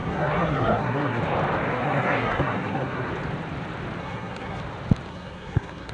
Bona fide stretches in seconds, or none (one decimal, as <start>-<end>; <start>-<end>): 1.2-1.7; 3.1-4.0; 4.6-5.1